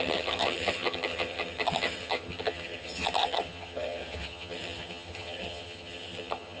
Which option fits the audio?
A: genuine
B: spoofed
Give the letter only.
B